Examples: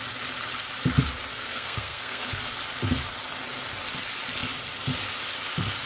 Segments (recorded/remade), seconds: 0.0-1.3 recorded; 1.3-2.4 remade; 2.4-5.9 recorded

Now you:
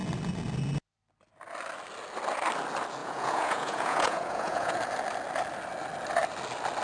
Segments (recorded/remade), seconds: 0.0-3.0 recorded; 3.0-4.8 remade; 4.8-6.8 recorded

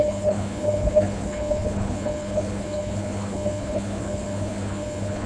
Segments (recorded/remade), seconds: 0.0-5.3 remade

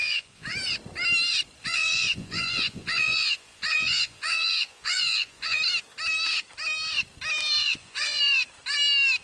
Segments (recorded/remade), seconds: 0.0-0.5 remade; 0.5-1.6 recorded; 1.6-5.6 remade; 5.6-7.6 recorded; 7.6-8.2 remade; 8.2-9.2 recorded

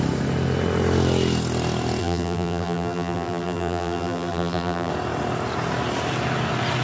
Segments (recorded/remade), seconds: 0.0-2.0 recorded; 2.0-4.9 remade; 4.9-6.8 recorded

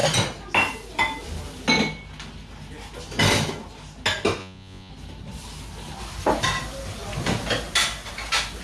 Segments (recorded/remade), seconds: 0.0-4.4 recorded; 4.4-4.9 remade; 4.9-8.6 recorded